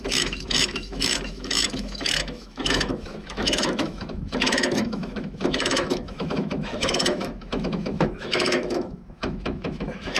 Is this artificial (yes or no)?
yes